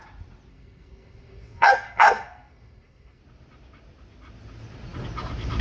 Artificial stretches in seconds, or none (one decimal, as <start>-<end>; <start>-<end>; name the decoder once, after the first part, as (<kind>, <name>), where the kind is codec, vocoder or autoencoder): 0.5-3.2 (codec, SNAC)